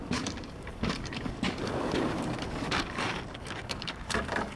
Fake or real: fake